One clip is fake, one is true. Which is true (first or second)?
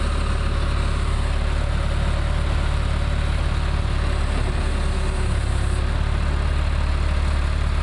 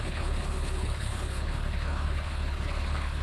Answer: first